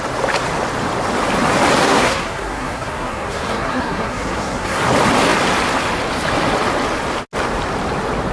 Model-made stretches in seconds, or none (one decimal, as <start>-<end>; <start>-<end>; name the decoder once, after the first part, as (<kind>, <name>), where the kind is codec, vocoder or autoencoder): 1.8-4.8 (codec, SNAC)